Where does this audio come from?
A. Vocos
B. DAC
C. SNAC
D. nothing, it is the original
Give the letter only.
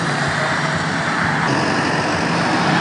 D